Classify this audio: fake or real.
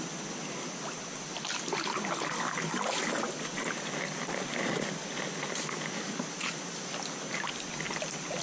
real